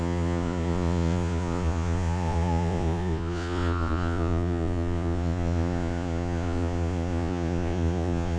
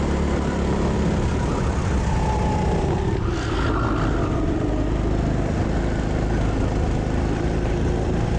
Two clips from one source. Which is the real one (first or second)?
second